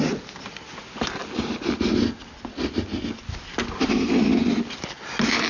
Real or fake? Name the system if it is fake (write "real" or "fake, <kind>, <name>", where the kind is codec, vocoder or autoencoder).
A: real